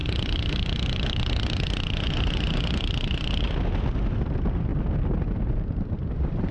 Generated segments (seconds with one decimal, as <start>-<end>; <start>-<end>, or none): none